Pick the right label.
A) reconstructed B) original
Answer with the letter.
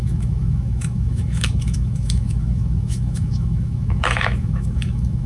A